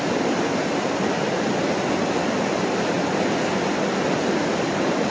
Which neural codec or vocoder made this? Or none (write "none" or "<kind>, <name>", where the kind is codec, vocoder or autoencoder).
none